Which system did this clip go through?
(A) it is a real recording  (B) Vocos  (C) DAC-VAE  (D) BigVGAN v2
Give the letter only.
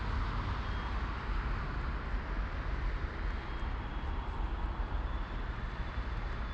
A